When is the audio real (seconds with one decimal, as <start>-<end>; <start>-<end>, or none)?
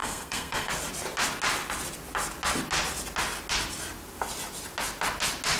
0.7-5.6